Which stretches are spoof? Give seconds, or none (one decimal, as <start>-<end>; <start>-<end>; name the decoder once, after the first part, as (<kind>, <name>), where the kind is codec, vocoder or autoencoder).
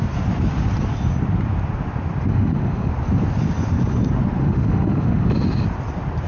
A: 2.3-2.9 (autoencoder, DAC-VAE); 4.4-5.3